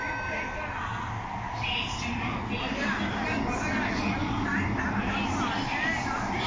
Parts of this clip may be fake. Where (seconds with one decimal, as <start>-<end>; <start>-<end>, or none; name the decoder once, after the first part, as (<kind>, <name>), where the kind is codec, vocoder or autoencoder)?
none